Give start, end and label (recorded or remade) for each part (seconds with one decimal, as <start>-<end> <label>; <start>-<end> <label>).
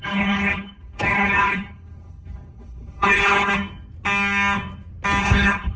0.0-3.5 remade; 3.5-5.2 recorded; 5.2-5.8 remade